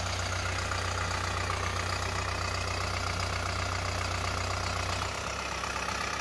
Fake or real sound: real